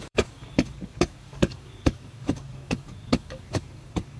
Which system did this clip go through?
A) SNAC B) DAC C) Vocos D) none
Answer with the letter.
B